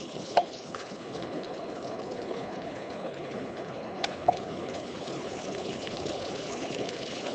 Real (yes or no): no